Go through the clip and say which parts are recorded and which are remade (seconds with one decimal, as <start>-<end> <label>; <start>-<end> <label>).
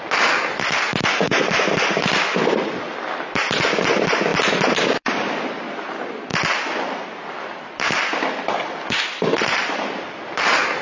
0.0-0.9 recorded; 0.9-3.9 remade; 3.9-4.3 recorded; 4.3-5.1 remade; 5.1-6.3 recorded; 6.3-10.8 remade